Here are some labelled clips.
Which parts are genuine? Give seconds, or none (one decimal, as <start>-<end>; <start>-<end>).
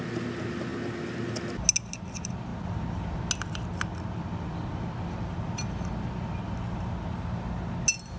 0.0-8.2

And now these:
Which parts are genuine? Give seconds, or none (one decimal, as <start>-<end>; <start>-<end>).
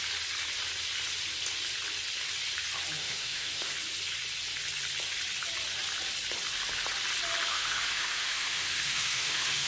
0.0-3.0; 3.7-7.5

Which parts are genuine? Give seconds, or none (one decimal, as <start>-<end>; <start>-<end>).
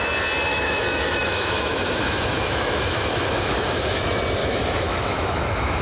0.0-0.5; 4.0-4.4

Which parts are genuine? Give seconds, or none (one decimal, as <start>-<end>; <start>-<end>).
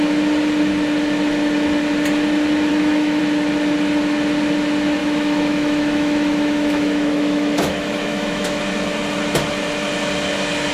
0.0-2.7; 3.2-5.0; 8.6-10.7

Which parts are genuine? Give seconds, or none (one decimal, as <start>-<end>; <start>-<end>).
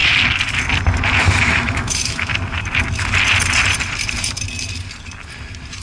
0.0-1.2; 2.3-5.8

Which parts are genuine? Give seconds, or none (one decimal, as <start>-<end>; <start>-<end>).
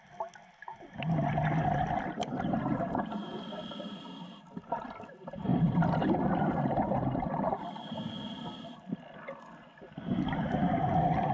0.0-11.3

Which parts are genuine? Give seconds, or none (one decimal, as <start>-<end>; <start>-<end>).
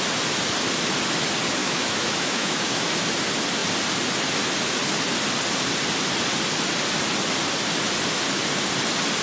0.0-1.6; 2.9-9.2